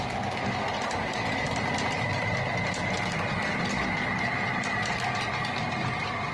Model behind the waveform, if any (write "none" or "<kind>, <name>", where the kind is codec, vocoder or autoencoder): none